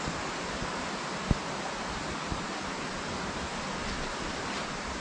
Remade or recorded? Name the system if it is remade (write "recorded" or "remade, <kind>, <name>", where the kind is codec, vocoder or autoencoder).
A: recorded